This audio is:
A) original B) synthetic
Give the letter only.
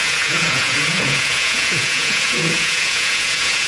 B